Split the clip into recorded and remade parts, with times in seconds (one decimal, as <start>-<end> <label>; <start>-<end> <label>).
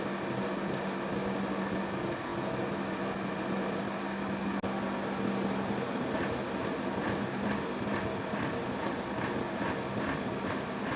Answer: 0.0-11.0 recorded